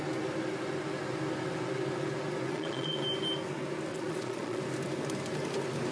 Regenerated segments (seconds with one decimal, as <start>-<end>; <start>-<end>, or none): 2.5-3.0; 3.9-4.6